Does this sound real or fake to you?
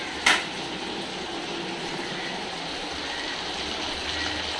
real